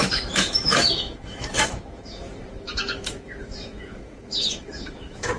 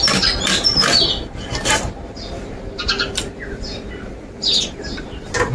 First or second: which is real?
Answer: second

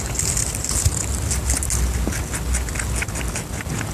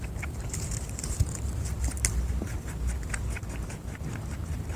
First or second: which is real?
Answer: first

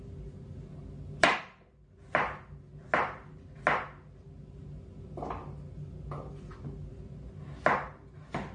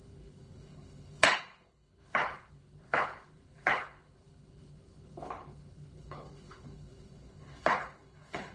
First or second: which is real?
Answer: first